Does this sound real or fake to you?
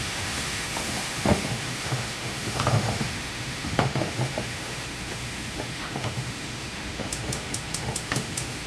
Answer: fake